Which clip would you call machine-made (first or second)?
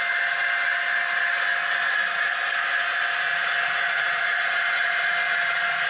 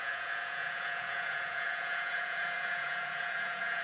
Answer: second